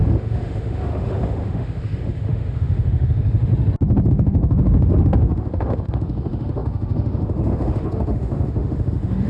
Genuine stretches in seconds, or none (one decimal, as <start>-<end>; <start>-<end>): 3.5-4.1